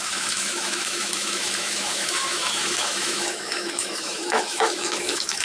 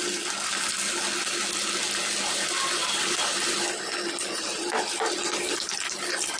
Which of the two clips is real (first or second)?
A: second